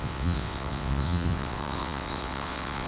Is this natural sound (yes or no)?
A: no